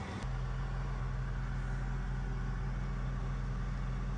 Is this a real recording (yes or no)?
yes